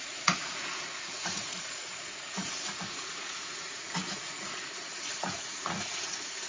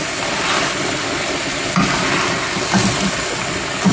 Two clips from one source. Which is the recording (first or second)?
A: second